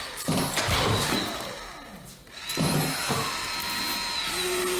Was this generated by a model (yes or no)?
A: no